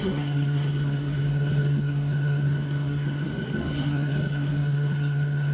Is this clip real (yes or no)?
no